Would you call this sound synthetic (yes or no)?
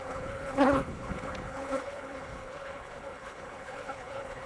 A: yes